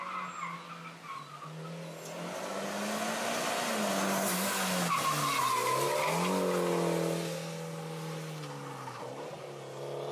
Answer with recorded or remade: recorded